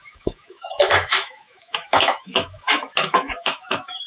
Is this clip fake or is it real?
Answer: fake